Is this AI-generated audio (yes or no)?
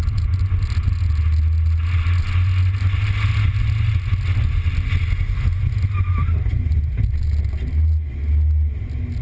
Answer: no